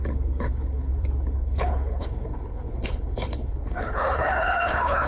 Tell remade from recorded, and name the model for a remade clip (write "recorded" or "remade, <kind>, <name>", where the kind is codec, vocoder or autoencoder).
remade, codec, HILCodec